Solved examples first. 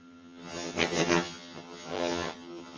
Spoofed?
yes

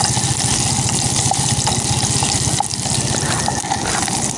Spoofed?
no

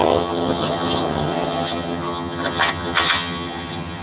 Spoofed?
yes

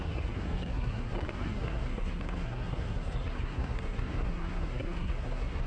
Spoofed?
yes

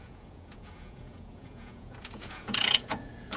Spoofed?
yes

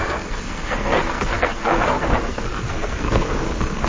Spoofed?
yes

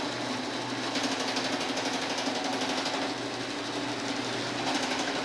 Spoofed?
no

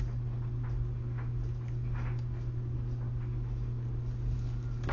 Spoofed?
no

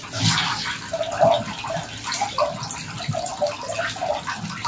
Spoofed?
no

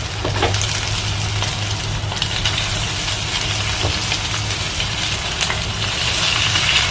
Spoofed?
no